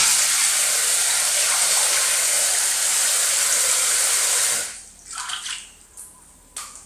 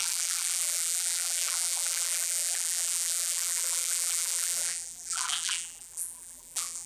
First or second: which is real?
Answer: first